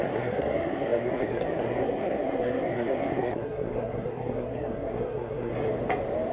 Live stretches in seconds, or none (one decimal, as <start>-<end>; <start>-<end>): 5.5-6.3